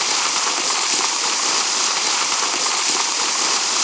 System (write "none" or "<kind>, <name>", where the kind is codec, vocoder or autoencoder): vocoder, BigVGAN v2